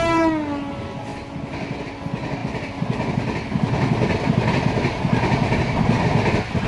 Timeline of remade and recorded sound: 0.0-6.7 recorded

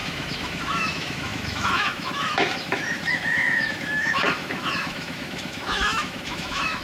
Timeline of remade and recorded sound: 0.0-6.8 remade

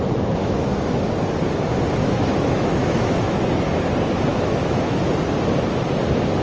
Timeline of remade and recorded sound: 0.0-0.4 recorded; 0.4-1.0 remade; 1.0-2.0 recorded; 2.0-3.5 remade; 3.5-4.3 recorded; 4.3-5.0 remade; 5.0-6.4 recorded

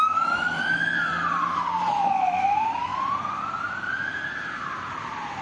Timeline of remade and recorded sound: 0.0-1.1 remade; 1.1-1.9 recorded; 1.9-2.9 remade; 2.9-5.4 recorded